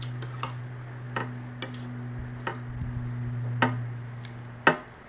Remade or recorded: recorded